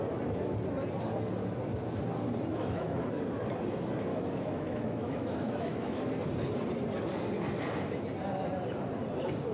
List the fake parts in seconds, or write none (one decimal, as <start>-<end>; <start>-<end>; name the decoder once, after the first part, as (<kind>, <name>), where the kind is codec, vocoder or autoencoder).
2.5-3.0 (autoencoder, DAC-VAE); 4.1-6.0